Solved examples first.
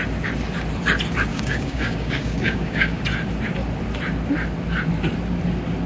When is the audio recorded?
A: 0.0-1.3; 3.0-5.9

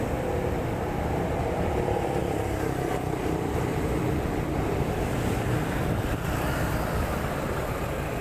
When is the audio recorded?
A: none

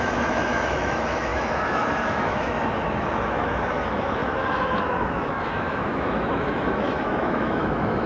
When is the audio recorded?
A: none

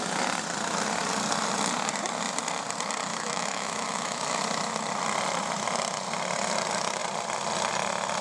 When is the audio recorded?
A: 0.0-3.1; 4.4-8.2

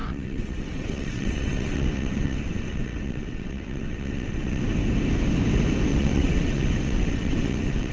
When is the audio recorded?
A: 4.6-5.9

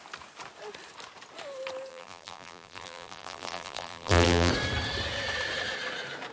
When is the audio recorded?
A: 0.0-1.9; 4.5-6.3

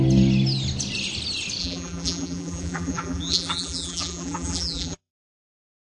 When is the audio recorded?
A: 0.0-1.6; 5.1-5.9